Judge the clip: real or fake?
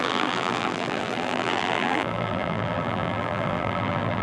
fake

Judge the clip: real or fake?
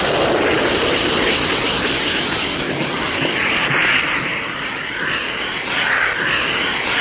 real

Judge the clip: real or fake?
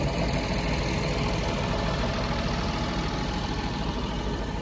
real